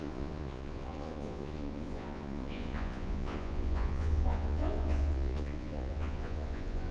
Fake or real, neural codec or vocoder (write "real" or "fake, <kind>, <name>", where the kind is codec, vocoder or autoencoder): fake, vocoder, Vocos